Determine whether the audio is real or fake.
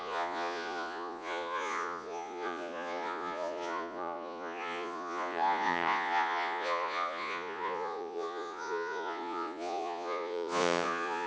fake